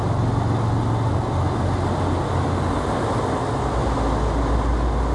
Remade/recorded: recorded